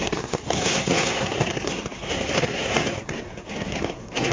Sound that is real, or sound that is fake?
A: fake